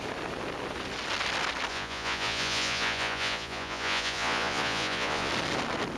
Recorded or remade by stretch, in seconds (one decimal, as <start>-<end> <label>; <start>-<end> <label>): 0.0-1.7 recorded; 1.7-5.3 remade; 5.3-6.0 recorded